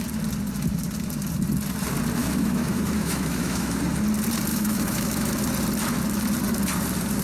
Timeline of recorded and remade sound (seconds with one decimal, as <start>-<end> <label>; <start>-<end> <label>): 0.0-2.2 recorded; 2.2-3.8 remade; 3.8-4.5 recorded; 4.5-5.3 remade; 5.3-7.2 recorded

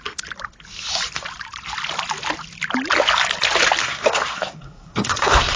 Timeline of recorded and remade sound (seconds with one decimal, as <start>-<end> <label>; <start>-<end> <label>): 0.0-3.8 recorded; 3.8-5.6 remade

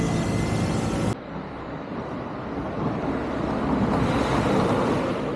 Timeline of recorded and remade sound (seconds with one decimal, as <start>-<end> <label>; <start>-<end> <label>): 0.0-5.4 recorded